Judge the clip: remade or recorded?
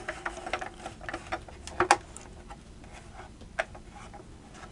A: recorded